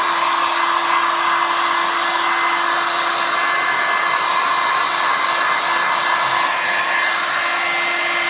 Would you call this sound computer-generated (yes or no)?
no